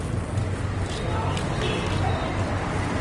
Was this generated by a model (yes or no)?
no